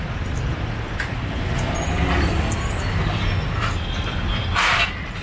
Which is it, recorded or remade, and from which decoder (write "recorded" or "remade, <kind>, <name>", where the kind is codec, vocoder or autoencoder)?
recorded